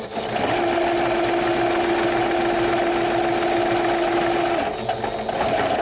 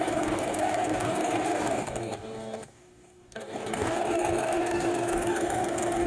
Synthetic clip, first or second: second